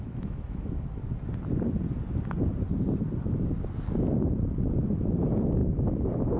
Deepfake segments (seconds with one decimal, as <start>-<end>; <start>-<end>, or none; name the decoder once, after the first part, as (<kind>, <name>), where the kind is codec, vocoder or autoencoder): 0.0-1.0 (autoencoder, DAC-VAE); 4.8-6.4